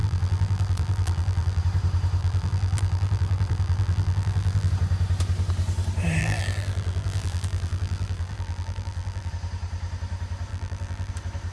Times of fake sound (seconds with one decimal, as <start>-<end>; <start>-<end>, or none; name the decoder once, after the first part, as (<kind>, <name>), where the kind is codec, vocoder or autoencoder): 0.0-1.6 (vocoder, BigVGAN v2); 2.2-4.7; 6.2-9.3; 10.5-11.1